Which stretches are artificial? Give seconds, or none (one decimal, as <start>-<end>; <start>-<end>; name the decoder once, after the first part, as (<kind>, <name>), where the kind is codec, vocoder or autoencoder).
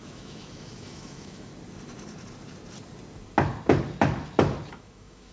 0.0-1.5 (autoencoder, DAC-VAE); 4.7-5.3